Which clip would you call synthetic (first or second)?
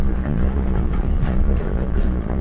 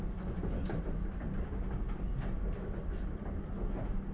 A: first